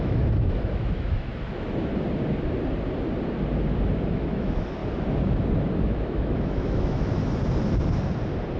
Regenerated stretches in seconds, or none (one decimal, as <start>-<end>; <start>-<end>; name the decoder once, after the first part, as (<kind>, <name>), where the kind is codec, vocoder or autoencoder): 0.0-1.3 (autoencoder, DAC-VAE); 4.1-4.8; 5.8-7.2